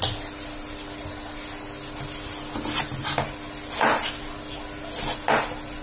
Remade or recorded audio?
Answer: recorded